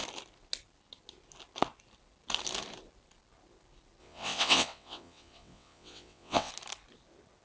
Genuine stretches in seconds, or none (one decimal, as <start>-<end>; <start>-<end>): 0.0-4.0; 6.5-7.4